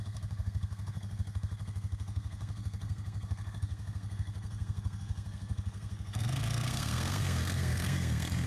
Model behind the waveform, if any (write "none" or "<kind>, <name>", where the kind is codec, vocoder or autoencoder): codec, SNAC